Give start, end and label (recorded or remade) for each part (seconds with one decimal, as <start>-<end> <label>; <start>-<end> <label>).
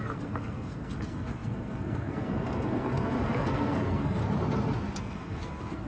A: 0.0-4.2 remade; 4.2-5.0 recorded; 5.0-5.9 remade